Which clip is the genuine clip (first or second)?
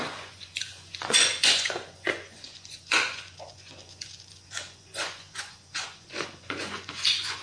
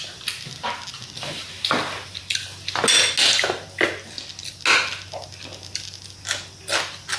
second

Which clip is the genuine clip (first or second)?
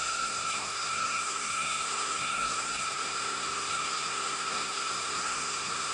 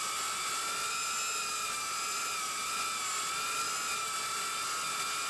second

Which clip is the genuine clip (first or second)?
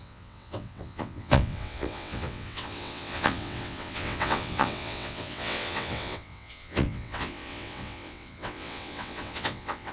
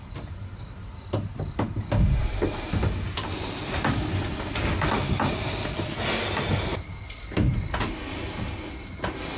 second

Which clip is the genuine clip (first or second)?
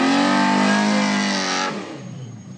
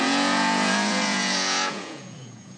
first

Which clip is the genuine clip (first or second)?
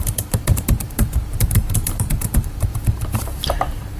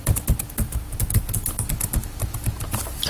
second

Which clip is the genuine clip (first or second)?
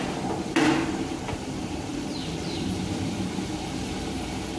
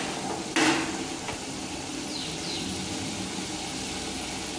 second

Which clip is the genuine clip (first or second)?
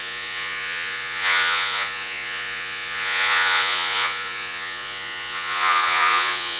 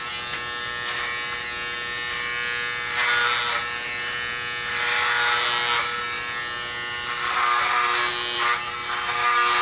second